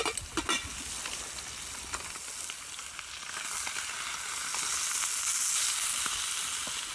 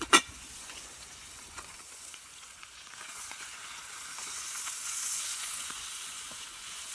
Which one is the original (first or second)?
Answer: first